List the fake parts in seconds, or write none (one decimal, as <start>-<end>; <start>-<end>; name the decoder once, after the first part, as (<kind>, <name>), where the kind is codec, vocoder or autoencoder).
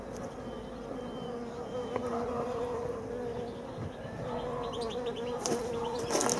2.1-2.8 (vocoder, BigVGAN v2)